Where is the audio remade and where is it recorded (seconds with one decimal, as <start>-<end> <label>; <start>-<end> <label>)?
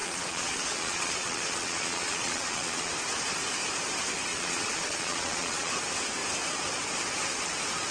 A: 0.0-2.9 remade; 2.9-4.3 recorded; 4.3-5.7 remade; 5.7-7.9 recorded